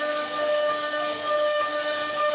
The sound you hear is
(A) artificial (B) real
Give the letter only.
A